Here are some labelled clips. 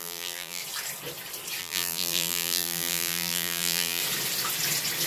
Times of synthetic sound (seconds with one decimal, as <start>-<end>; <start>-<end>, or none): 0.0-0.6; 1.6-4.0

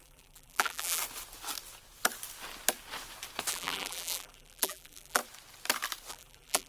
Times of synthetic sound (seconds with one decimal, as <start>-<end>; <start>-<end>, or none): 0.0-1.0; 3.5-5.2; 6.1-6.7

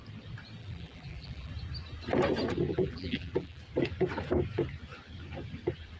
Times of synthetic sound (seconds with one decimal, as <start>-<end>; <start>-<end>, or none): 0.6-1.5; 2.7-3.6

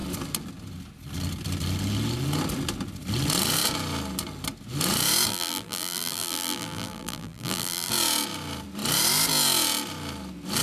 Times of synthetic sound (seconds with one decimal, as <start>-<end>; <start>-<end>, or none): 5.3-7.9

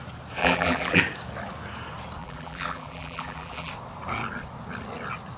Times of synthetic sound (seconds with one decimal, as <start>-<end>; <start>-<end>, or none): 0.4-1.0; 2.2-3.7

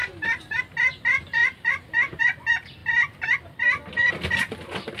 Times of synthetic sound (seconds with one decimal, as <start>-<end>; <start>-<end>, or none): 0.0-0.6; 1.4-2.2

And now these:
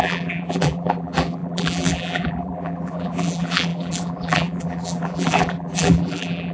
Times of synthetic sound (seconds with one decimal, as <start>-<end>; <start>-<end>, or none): 0.0-6.5

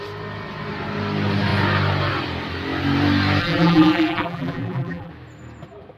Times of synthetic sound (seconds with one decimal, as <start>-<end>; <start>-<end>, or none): 3.4-5.1